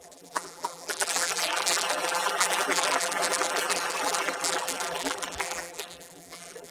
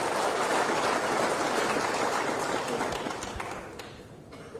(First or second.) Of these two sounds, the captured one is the second